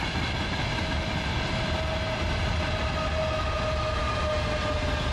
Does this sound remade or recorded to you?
recorded